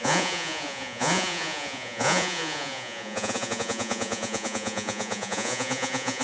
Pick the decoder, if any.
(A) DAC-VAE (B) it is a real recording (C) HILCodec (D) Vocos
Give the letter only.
D